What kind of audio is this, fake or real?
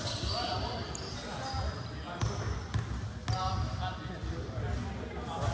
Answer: real